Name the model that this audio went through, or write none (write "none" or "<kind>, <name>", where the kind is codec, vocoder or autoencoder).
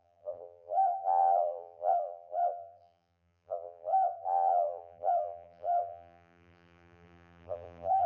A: vocoder, BigVGAN v2